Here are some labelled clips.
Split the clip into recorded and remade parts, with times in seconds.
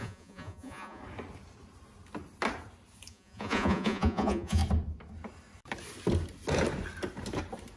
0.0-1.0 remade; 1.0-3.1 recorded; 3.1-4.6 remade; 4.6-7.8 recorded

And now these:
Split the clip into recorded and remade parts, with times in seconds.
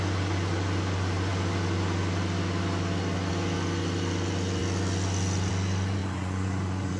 0.0-6.0 recorded; 6.0-7.0 remade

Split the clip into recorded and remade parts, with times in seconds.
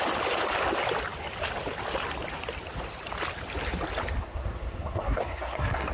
0.0-4.2 recorded; 4.2-5.9 remade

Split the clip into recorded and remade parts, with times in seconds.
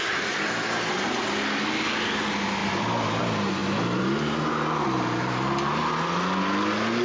0.0-7.0 recorded